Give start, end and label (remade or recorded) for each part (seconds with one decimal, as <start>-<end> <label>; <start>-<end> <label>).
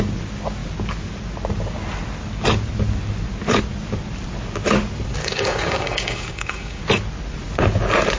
0.0-5.2 recorded; 5.2-6.8 remade; 6.8-8.2 recorded